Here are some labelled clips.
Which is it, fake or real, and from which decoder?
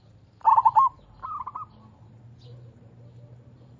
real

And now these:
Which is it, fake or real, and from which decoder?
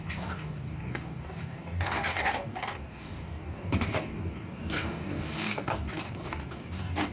fake, codec, DAC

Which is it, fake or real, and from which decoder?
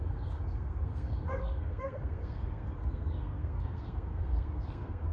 fake, codec, SNAC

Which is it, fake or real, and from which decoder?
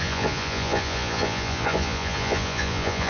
fake, vocoder, Vocos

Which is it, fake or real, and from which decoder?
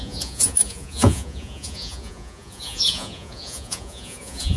fake, vocoder, Vocos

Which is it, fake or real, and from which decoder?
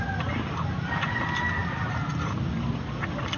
real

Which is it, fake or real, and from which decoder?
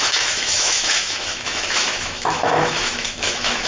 fake, autoencoder, DAC-VAE